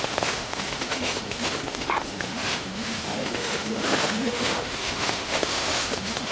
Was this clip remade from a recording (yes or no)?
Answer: yes